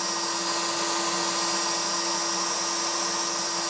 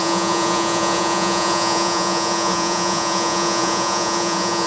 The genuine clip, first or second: first